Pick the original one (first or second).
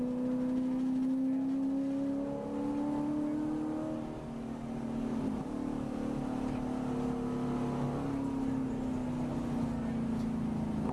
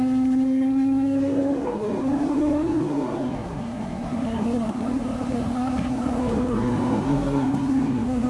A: first